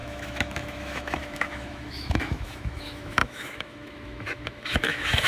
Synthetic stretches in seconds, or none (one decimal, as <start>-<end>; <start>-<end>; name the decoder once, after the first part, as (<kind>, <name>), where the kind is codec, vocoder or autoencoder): 0.0-5.3 (autoencoder, DAC-VAE)